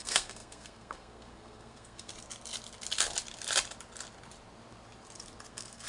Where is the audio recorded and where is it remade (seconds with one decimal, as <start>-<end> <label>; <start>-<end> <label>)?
0.0-2.1 remade; 2.1-5.5 recorded; 5.5-5.9 remade